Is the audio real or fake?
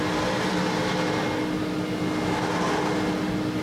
real